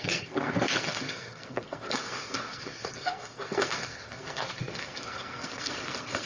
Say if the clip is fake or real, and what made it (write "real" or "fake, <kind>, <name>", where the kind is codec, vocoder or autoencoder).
fake, codec, SNAC